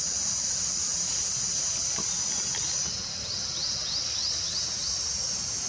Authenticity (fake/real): real